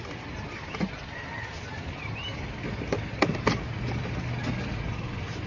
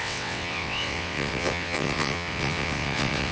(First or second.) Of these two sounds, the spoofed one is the second